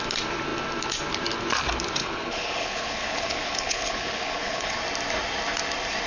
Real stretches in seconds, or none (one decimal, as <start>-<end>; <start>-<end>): 0.0-2.0; 4.8-6.1